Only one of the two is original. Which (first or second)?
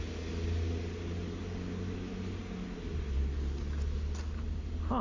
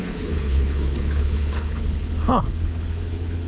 first